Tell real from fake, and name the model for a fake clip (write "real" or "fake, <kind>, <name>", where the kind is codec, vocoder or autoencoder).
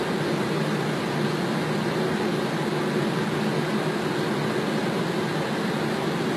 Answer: real